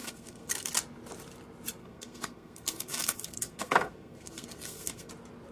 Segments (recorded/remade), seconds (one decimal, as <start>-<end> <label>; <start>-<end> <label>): 0.0-0.7 remade; 0.7-1.8 recorded; 1.8-5.1 remade; 5.1-5.5 recorded